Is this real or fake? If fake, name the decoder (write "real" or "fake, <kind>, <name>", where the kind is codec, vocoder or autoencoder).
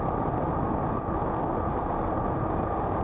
real